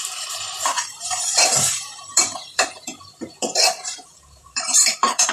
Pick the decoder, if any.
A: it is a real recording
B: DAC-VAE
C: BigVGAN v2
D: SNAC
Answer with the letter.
C